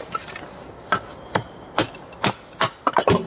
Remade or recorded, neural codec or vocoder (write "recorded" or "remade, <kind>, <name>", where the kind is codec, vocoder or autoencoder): recorded